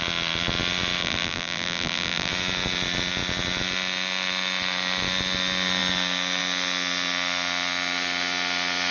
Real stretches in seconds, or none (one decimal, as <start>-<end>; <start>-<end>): 0.0-1.0; 2.3-8.9